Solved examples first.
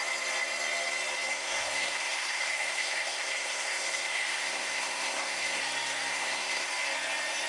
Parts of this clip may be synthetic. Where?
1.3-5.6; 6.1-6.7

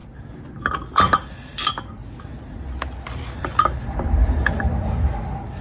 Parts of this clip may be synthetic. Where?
none

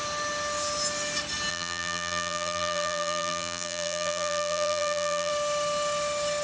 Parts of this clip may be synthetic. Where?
1.5-5.3

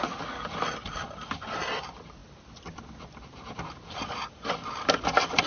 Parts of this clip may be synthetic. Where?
none